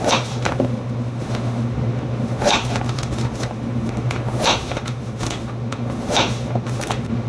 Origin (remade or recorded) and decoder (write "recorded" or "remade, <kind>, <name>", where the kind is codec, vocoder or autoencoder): remade, autoencoder, DAC-VAE